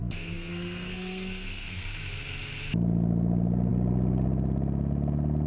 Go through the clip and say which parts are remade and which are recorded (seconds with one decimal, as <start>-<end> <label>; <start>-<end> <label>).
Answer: 0.0-1.9 remade; 1.9-5.5 recorded